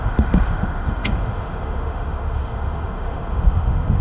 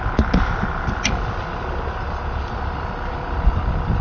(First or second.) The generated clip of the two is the first